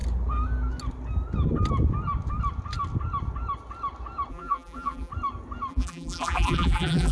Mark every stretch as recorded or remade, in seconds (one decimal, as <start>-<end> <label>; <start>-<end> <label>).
0.0-4.3 recorded; 4.3-5.1 remade; 5.1-5.7 recorded; 5.7-7.1 remade